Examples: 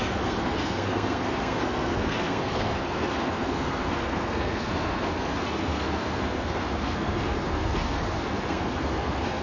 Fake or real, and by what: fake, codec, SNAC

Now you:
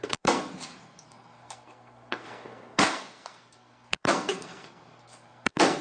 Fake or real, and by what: fake, codec, SNAC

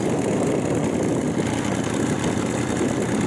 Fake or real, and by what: real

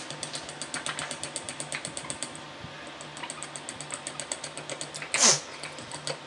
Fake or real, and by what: real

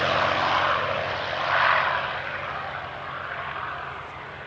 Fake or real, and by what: real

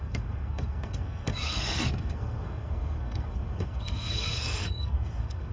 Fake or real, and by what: fake, codec, SNAC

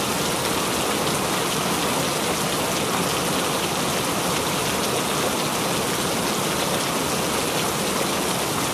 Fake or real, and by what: real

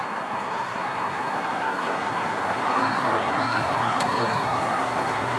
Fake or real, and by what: fake, codec, SNAC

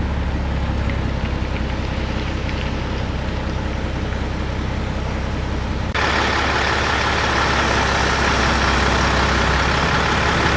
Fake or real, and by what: real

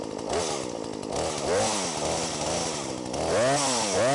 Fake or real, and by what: real